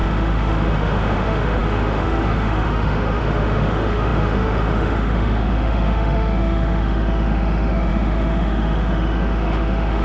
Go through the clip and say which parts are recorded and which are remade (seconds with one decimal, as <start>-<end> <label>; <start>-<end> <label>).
0.0-10.0 remade